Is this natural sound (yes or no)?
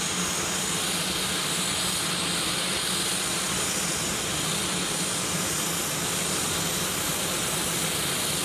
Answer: yes